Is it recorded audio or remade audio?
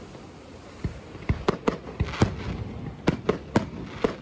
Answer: recorded